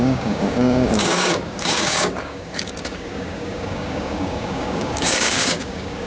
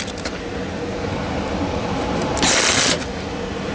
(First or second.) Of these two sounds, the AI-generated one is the first